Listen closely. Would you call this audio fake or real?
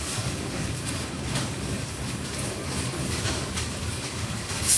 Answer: fake